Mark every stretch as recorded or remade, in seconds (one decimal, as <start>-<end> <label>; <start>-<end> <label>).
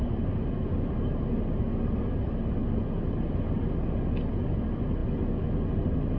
0.0-6.2 recorded